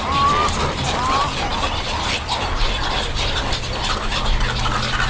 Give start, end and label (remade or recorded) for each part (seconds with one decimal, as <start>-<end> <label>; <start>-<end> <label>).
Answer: 0.0-5.1 recorded